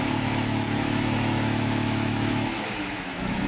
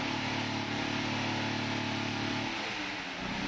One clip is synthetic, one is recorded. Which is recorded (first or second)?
second